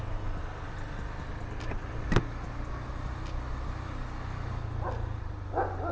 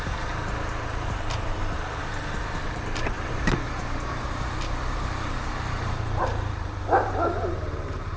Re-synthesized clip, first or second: second